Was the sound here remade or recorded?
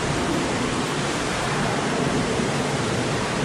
remade